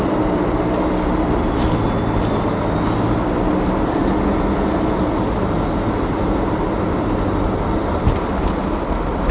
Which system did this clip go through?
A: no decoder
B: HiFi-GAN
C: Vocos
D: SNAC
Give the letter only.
A